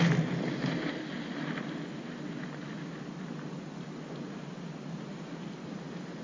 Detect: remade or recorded recorded